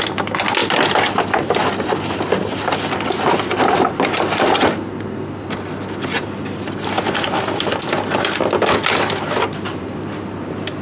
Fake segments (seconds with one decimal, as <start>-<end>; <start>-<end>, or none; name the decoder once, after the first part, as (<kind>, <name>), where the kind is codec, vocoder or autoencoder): none